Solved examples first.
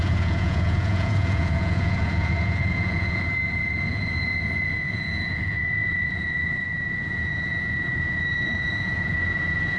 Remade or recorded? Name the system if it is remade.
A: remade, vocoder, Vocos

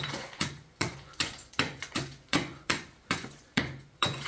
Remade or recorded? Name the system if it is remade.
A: remade, vocoder, Vocos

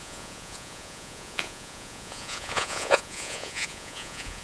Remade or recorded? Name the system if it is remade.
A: remade, vocoder, Vocos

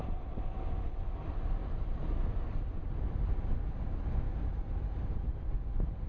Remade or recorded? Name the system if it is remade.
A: recorded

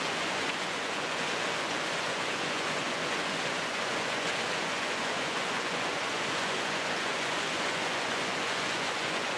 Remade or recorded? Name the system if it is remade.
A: remade, vocoder, Vocos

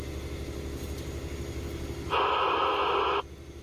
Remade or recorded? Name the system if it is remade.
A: recorded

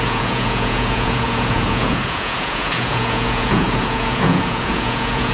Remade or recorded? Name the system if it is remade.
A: remade, vocoder, Vocos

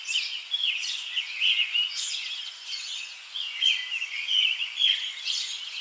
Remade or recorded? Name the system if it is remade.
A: remade, vocoder, Vocos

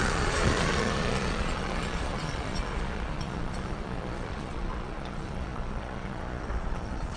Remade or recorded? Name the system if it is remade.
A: remade, vocoder, Vocos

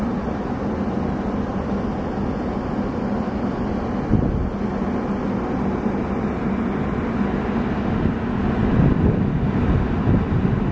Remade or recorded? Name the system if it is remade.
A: recorded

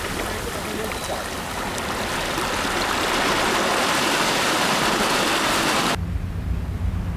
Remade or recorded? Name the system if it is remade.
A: recorded